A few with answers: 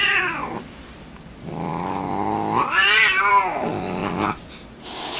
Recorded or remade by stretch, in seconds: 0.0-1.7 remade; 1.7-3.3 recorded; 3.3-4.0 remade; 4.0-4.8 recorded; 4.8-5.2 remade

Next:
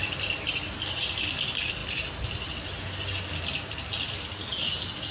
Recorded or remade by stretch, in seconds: 0.0-5.1 recorded